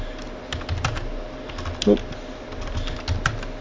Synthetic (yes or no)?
no